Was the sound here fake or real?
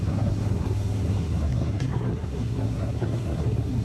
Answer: fake